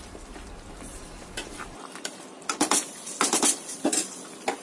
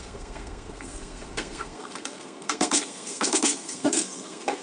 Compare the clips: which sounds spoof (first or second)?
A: second